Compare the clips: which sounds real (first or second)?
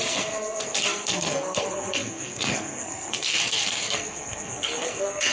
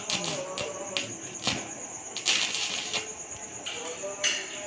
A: second